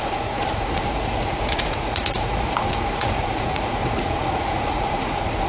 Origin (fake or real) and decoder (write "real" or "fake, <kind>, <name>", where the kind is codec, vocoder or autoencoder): fake, vocoder, Vocos